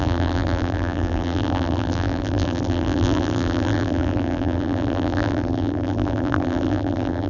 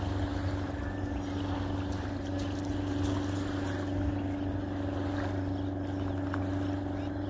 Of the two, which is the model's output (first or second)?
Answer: first